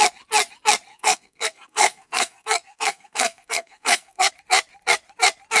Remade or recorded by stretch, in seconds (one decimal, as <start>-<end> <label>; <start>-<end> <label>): 0.0-0.9 recorded; 0.9-4.3 remade; 4.3-5.6 recorded